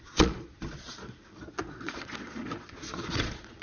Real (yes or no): no